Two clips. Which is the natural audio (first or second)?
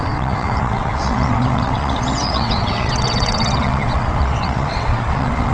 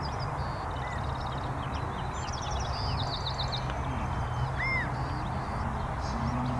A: second